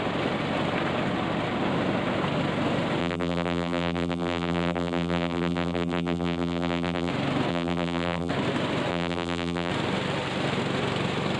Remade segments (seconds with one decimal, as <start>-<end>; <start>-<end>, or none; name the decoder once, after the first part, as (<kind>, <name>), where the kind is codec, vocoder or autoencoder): 3.0-7.1 (vocoder, BigVGAN v2); 7.5-8.3; 8.9-9.7